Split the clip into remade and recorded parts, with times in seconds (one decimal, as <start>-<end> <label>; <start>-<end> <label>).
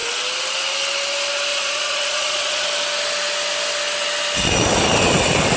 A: 0.0-1.5 recorded; 1.5-2.7 remade; 2.7-5.6 recorded